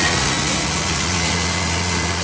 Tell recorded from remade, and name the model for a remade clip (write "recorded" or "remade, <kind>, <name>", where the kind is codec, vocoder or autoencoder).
remade, vocoder, Vocos